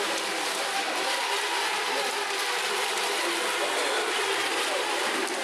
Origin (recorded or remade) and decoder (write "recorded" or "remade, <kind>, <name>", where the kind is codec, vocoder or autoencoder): remade, vocoder, BigVGAN v2